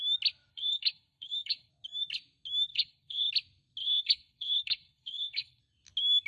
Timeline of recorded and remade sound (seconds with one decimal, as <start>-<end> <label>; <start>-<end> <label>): 0.0-0.5 recorded; 0.5-1.7 remade; 1.7-2.7 recorded; 2.7-3.3 remade; 3.3-3.8 recorded; 3.8-5.6 remade; 5.6-6.3 recorded